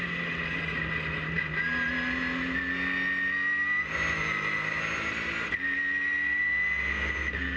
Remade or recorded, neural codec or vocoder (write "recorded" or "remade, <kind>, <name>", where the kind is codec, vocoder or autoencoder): recorded